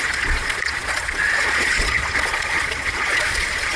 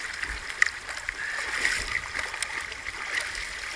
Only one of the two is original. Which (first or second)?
second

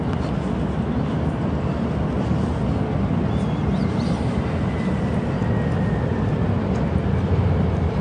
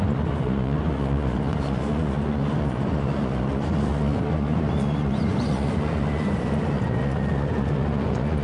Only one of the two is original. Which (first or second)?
first